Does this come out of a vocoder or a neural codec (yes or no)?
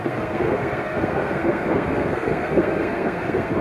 yes